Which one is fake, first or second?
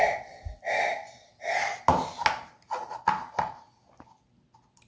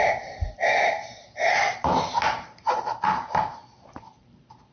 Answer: second